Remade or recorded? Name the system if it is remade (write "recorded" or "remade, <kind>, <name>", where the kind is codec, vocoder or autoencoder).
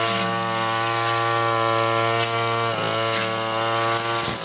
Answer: recorded